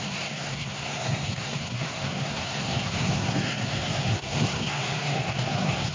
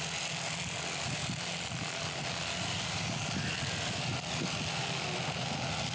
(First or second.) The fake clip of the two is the first